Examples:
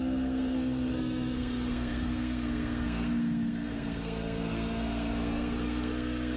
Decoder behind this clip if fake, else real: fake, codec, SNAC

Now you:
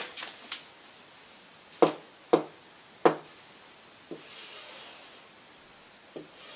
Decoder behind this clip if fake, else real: real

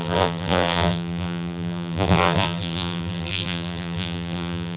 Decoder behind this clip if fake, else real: fake, vocoder, BigVGAN v2